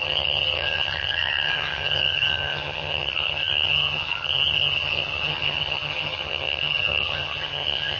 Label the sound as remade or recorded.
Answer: remade